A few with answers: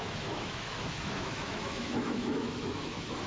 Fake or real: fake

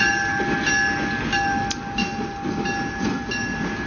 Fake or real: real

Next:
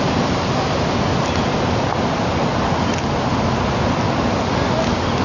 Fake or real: real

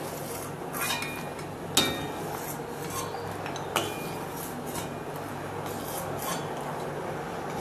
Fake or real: real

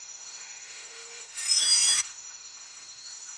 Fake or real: fake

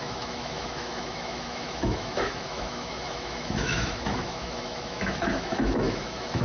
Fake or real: fake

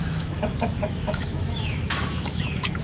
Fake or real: fake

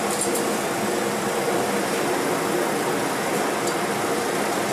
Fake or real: real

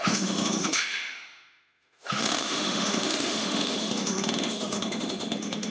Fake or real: fake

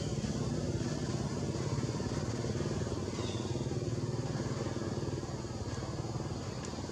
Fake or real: real